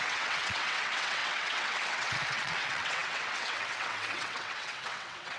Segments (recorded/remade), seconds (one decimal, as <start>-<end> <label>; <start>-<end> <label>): 0.0-5.4 remade